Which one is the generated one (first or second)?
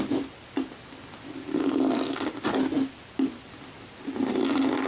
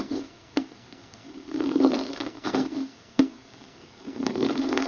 second